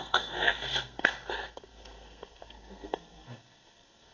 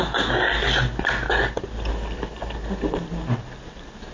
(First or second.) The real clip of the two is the second